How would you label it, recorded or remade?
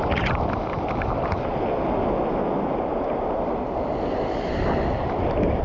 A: recorded